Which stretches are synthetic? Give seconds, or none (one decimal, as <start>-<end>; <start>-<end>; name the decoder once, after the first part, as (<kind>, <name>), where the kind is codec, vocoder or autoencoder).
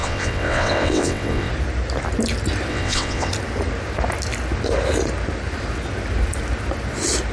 0.0-1.5 (vocoder, WaveNeXt); 2.7-3.3